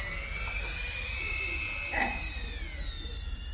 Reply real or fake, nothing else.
real